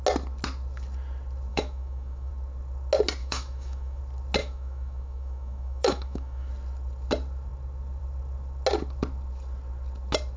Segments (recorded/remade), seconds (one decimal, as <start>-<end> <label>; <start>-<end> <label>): 0.0-1.5 recorded; 1.5-2.3 remade; 2.3-3.2 recorded; 3.2-4.0 remade; 4.0-4.4 recorded; 4.4-6.5 remade; 6.5-10.4 recorded